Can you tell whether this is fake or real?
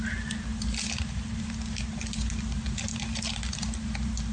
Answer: real